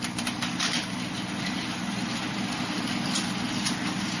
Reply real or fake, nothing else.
real